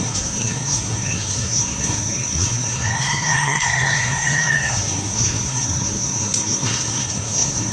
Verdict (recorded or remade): remade